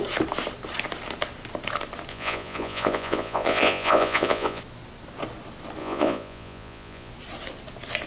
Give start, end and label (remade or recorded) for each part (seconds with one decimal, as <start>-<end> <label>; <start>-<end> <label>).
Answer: 0.0-2.1 recorded; 2.1-4.6 remade; 4.6-5.8 recorded; 5.8-7.1 remade; 7.1-8.1 recorded

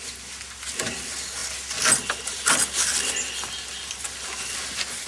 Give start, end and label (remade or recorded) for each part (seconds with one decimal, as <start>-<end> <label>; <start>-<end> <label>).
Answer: 0.0-5.1 recorded

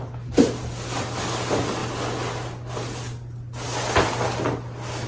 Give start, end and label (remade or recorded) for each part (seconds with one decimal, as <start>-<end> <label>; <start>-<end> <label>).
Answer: 0.0-5.1 recorded

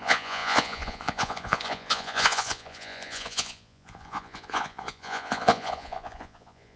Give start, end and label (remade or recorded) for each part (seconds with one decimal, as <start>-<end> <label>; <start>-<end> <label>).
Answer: 0.0-6.8 remade

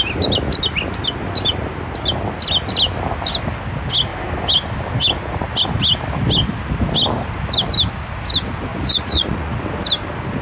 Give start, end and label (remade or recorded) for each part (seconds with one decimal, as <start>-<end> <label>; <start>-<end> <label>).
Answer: 0.0-8.7 recorded; 8.7-9.6 remade; 9.6-10.4 recorded